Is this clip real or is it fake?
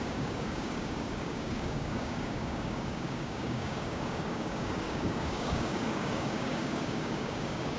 fake